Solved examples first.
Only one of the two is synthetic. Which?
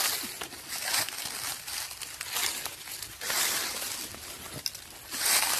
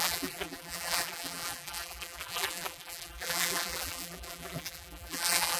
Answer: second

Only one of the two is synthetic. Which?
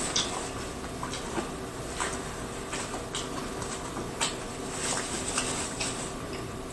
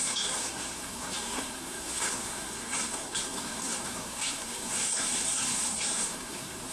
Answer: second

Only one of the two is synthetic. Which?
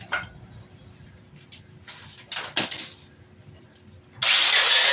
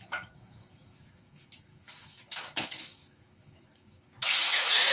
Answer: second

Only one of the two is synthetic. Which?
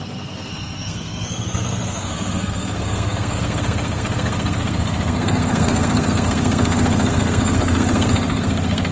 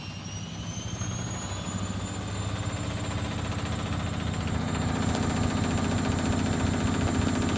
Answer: first